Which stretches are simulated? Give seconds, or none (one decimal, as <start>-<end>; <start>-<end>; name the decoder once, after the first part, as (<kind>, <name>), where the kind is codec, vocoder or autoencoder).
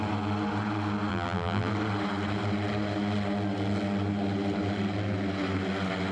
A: 1.1-1.7 (vocoder, BigVGAN v2)